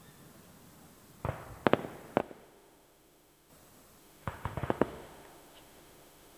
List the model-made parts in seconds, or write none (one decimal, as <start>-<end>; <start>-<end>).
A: 2.2-3.5; 4.0-6.4